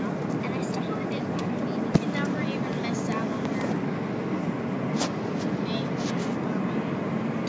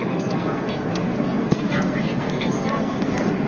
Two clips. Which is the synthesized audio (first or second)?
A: second